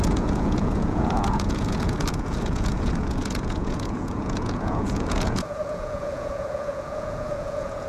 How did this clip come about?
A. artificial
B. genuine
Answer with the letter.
A